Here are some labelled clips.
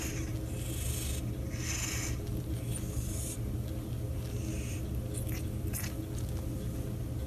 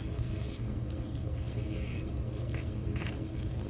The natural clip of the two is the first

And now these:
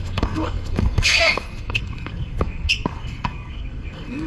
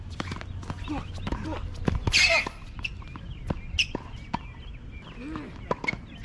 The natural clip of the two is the second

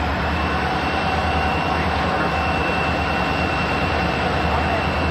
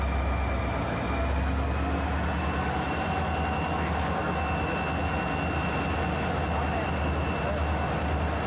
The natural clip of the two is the second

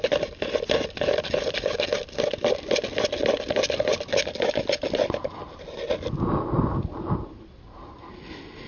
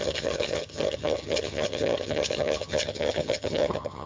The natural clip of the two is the first